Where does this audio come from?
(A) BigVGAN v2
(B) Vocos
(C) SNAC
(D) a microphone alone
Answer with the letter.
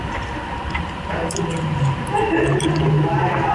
D